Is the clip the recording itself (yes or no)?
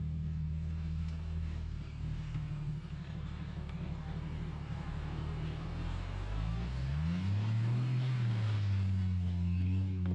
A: no